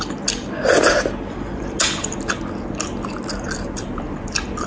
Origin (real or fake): real